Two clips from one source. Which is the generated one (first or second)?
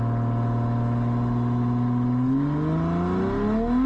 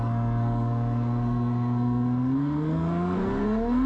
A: second